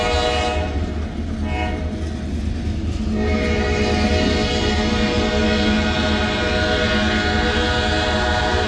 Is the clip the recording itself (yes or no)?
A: yes